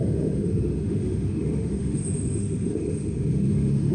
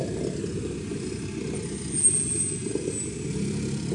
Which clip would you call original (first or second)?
second